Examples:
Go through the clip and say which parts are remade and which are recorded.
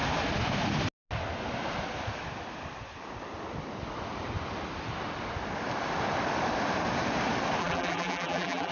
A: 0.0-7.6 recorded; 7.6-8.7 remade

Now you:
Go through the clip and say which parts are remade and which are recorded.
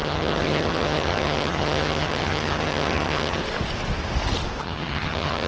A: 0.0-3.4 remade; 3.4-4.6 recorded; 4.6-5.5 remade